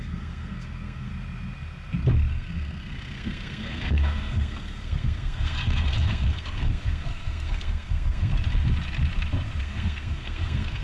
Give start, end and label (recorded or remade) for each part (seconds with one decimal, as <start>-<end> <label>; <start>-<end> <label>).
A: 0.0-1.1 remade; 1.1-2.3 recorded; 2.3-8.3 remade; 8.3-9.6 recorded; 9.6-10.8 remade